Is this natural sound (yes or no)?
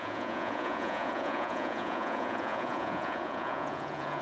no